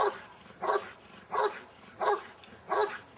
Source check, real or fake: real